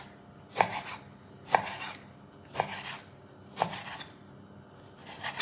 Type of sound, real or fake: real